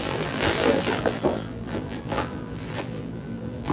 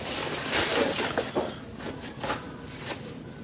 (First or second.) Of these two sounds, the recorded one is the second